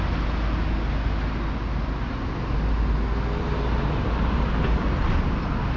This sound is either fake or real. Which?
real